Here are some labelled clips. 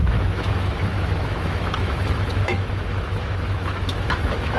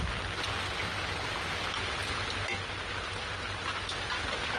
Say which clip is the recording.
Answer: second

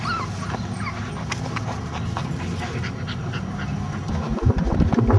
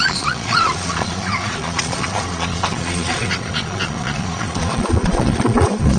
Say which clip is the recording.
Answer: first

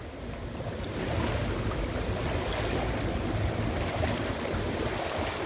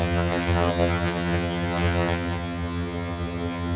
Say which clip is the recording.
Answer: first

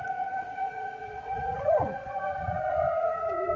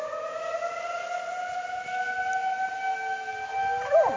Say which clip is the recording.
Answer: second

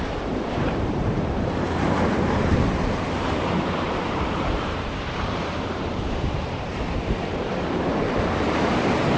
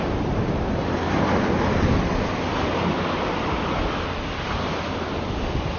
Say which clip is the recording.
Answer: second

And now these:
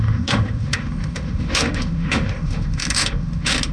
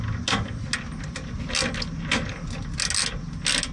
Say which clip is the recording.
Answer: second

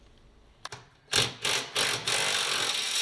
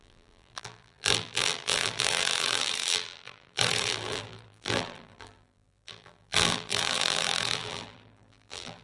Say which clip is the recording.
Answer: first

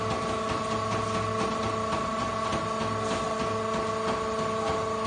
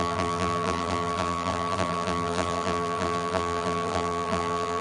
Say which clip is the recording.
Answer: first